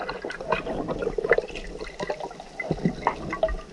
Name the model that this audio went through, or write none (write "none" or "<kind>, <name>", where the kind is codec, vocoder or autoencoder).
none